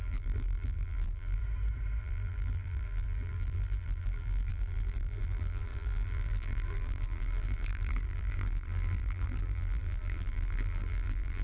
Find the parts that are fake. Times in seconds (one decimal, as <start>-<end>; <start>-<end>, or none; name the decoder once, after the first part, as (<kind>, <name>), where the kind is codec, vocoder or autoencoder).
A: 0.0-1.4 (vocoder, BigVGAN v2); 2.0-11.4